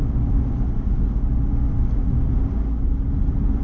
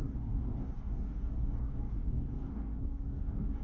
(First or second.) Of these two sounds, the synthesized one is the second